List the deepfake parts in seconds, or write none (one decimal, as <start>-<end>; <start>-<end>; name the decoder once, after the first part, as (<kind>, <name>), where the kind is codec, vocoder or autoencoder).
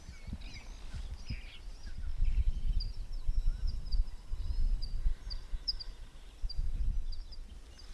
2.1-6.8 (vocoder, BigVGAN v2)